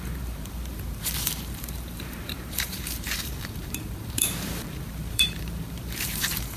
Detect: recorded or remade remade